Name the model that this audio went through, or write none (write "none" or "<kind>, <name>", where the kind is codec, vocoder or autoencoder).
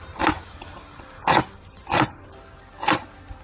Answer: none